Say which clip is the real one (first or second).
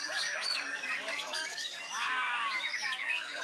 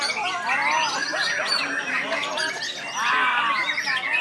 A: second